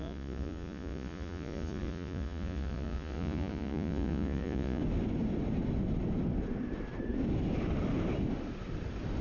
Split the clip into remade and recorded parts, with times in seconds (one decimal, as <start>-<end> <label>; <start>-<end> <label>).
0.0-4.8 remade; 4.8-9.2 recorded